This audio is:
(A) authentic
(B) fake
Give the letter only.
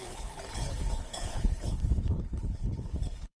B